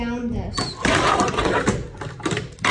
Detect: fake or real real